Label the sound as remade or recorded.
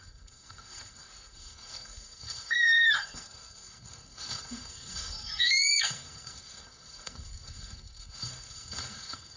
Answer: remade